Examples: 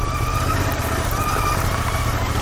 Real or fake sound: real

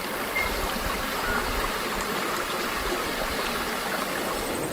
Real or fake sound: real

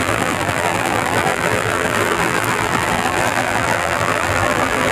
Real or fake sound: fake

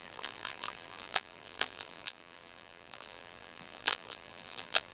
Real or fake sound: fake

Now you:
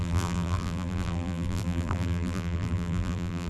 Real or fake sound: fake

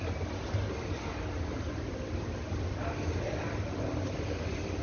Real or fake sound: real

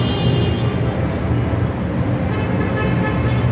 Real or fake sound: real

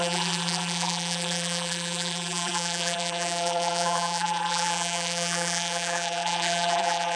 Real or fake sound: fake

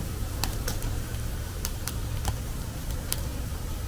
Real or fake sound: fake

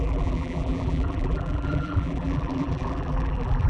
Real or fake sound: fake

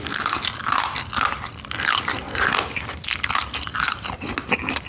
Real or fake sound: fake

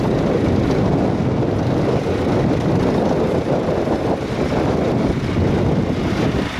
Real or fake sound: real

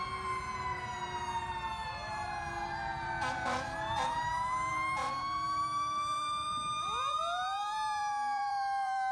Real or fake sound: fake